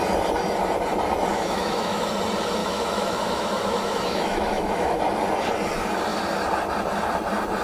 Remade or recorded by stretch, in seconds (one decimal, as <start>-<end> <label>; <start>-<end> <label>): 0.0-1.3 recorded; 1.3-2.1 remade; 2.1-2.6 recorded; 2.6-5.0 remade; 5.0-7.6 recorded

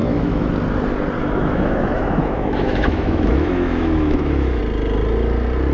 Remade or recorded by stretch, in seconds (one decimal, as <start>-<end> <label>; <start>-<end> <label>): 0.0-0.5 remade; 0.5-1.2 recorded; 1.2-4.6 remade; 4.6-5.7 recorded

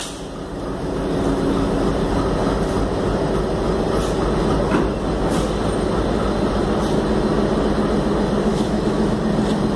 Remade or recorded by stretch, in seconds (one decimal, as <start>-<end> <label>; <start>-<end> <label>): 0.0-8.5 recorded; 8.5-9.2 remade; 9.2-9.8 recorded